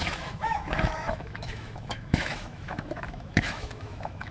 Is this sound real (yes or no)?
no